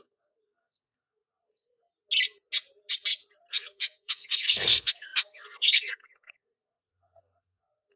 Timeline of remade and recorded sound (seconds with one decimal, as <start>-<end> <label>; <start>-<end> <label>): 0.0-1.9 remade; 1.9-3.5 recorded; 3.5-8.0 remade